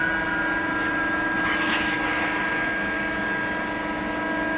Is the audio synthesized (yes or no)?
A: no